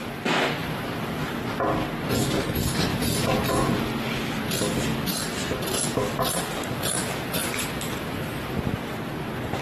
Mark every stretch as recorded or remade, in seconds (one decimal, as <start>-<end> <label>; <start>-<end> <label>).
0.0-0.6 recorded; 0.6-1.4 remade; 1.4-2.9 recorded; 2.9-3.5 remade; 3.5-9.6 recorded